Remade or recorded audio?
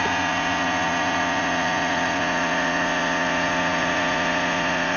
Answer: remade